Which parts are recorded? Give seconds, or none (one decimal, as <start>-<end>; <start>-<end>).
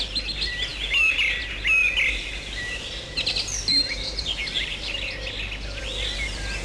0.0-6.6